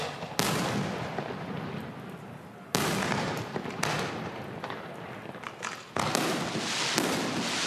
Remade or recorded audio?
recorded